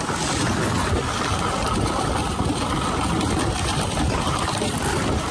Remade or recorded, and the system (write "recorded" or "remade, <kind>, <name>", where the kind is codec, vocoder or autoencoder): recorded